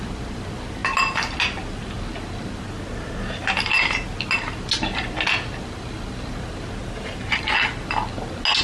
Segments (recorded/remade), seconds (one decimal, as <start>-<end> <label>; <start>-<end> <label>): 0.0-6.8 recorded; 6.8-7.5 remade; 7.5-8.6 recorded